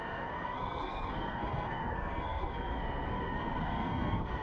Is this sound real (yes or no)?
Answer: no